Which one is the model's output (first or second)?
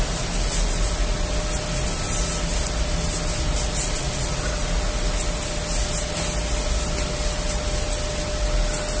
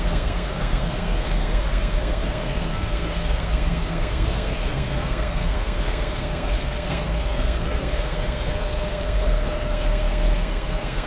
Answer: second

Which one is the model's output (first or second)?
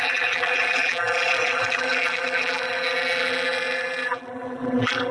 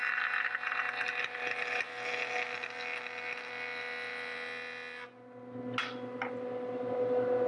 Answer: first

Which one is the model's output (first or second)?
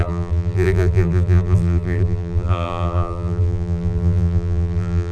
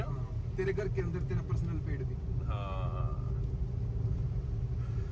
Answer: first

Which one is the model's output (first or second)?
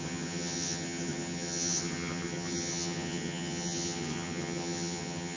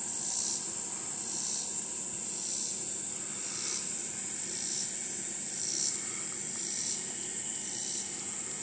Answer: first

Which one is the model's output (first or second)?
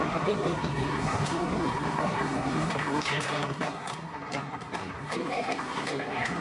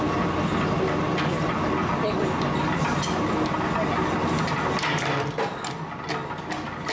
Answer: first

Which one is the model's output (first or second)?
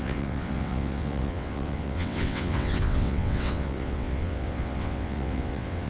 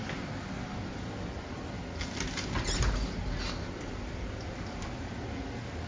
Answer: first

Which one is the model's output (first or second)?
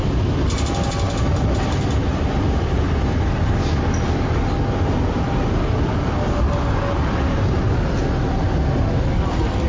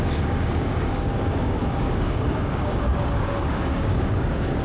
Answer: second